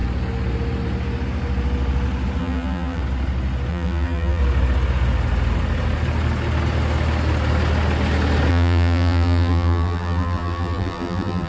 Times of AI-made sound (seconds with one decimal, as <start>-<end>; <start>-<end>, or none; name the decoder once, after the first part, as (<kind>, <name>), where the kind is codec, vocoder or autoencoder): 2.4-3.0 (vocoder, BigVGAN v2); 3.7-4.4; 8.5-11.5